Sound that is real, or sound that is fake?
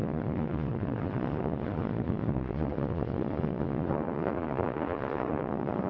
fake